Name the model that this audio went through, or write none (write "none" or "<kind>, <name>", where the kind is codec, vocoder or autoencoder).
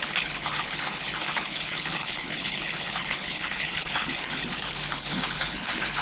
codec, HILCodec